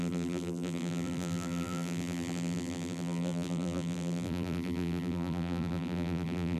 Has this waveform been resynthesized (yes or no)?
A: yes